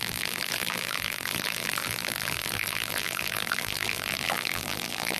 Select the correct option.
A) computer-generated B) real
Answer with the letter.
A